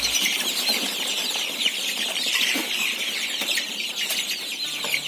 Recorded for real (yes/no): no